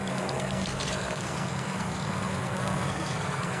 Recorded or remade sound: remade